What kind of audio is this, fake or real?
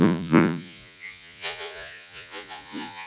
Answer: fake